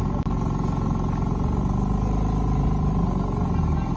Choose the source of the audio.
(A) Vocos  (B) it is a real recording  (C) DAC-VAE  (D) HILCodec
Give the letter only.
B